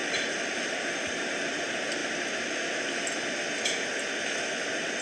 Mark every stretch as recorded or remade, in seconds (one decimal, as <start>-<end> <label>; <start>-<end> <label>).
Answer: 0.0-1.4 remade; 1.4-5.0 recorded